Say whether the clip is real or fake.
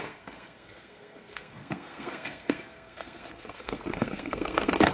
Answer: fake